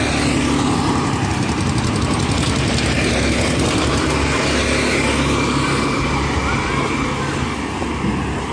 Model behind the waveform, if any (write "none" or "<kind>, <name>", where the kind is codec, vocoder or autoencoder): none